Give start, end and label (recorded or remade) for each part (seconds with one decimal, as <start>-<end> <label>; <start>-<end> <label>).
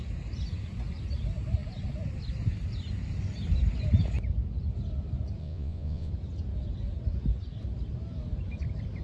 0.0-5.4 recorded; 5.4-6.1 remade; 6.1-9.0 recorded